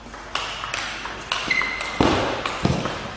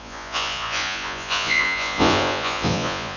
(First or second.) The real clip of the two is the first